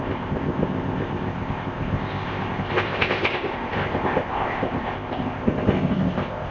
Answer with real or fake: fake